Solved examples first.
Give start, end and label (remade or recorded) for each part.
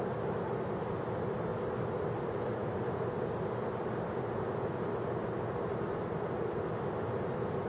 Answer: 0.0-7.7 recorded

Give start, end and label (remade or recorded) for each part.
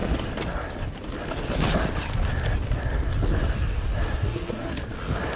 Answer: 0.0-4.1 recorded; 4.1-4.8 remade; 4.8-5.4 recorded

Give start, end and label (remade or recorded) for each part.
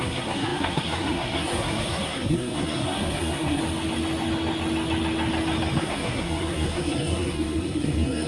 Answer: 0.0-3.6 remade; 3.6-5.8 recorded; 5.8-8.3 remade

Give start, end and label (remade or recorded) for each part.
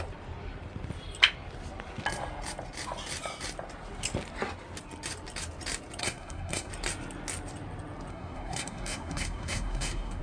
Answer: 0.0-6.0 recorded; 6.0-6.7 remade; 6.7-8.1 recorded; 8.1-10.2 remade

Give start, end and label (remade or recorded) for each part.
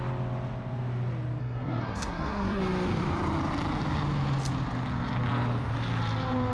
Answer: 0.0-1.4 recorded; 1.4-2.6 remade; 2.6-6.5 recorded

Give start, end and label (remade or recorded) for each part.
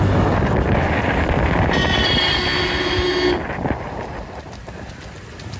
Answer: 0.0-5.6 recorded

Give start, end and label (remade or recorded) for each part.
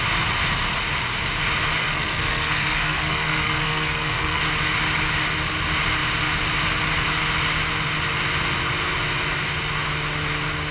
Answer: 0.0-1.8 recorded; 1.8-4.4 remade; 4.4-10.7 recorded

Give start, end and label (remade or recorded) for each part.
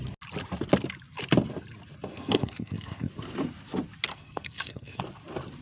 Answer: 0.0-2.1 recorded; 2.1-3.1 remade; 3.1-4.1 recorded; 4.1-5.0 remade; 5.0-5.6 recorded